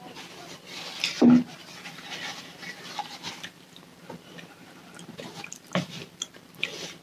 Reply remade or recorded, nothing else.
remade